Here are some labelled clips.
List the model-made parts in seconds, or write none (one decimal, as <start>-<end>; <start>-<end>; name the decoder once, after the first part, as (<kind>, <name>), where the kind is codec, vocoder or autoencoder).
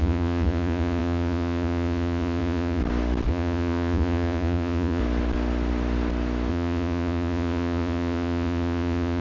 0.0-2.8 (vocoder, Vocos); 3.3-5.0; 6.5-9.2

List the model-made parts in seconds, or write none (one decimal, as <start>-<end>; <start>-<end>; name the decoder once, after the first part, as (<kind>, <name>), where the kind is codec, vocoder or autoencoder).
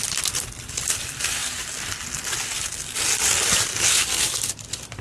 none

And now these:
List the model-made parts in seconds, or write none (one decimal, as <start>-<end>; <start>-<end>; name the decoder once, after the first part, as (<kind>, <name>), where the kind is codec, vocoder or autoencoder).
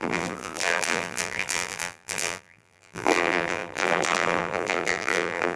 0.0-5.6 (vocoder, BigVGAN v2)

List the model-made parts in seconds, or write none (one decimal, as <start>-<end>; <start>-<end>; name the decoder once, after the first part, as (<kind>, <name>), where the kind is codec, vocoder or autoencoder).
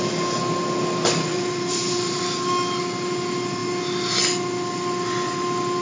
1.3-2.2 (vocoder, BigVGAN v2)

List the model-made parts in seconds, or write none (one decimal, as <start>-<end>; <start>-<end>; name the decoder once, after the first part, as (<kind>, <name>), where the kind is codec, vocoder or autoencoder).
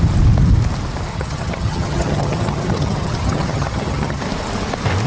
1.1-4.2 (vocoder, HiFi-GAN)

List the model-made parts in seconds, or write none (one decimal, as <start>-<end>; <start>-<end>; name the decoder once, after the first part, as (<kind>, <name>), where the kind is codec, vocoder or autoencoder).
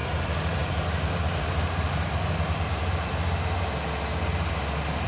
0.0-3.1 (vocoder, BigVGAN v2)